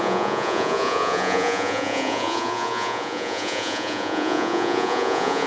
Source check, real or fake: fake